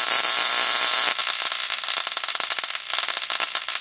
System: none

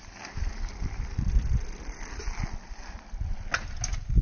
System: none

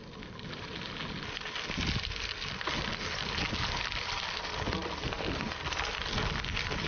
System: none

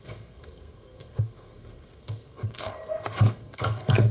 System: codec, SNAC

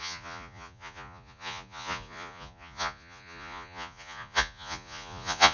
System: vocoder, Vocos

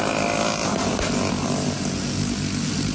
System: none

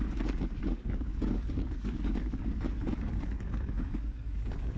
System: codec, DAC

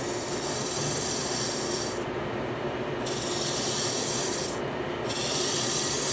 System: none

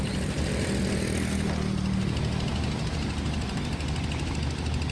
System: none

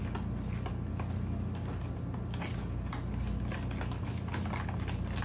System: none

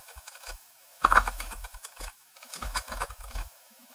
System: autoencoder, DAC-VAE